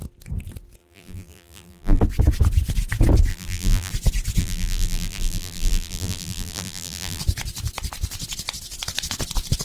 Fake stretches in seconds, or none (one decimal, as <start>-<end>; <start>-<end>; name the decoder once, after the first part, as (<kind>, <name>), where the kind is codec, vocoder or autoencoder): 0.8-2.0 (vocoder, BigVGAN v2); 3.3-3.9; 4.4-7.2